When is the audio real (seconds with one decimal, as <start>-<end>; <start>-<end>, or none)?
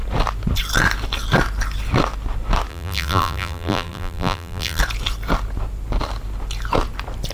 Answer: 0.0-2.7; 4.8-7.3